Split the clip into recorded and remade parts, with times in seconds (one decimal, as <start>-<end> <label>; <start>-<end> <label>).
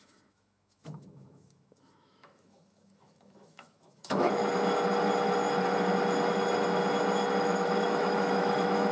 0.0-4.4 remade; 4.4-7.4 recorded; 7.4-8.9 remade